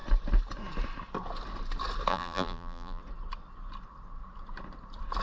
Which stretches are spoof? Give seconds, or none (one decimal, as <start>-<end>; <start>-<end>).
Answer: 2.1-3.0